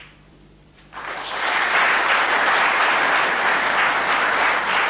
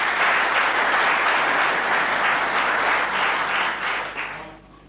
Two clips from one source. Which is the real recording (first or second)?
second